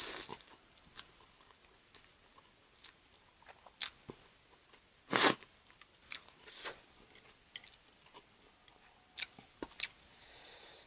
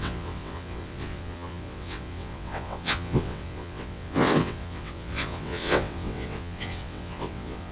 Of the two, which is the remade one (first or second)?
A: second